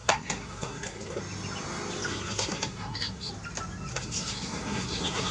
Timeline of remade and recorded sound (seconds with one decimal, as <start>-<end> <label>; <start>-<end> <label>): 0.0-1.2 remade; 1.2-2.1 recorded; 2.1-3.3 remade; 3.3-3.9 recorded; 3.9-5.3 remade